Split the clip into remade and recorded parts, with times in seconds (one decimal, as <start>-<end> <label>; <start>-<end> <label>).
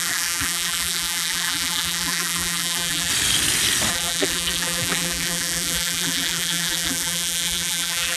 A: 0.0-3.1 remade; 3.1-3.9 recorded; 3.9-8.2 remade